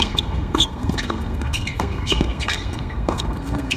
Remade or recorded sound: remade